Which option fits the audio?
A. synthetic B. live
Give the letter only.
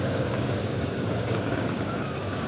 A